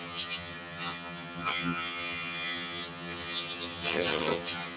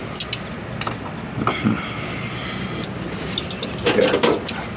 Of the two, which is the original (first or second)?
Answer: second